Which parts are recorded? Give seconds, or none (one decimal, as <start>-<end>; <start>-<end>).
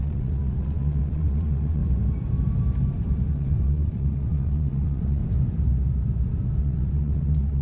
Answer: 1.8-3.3; 5.2-6.6